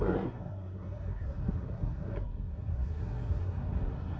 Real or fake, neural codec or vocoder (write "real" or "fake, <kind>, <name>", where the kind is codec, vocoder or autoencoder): fake, codec, SNAC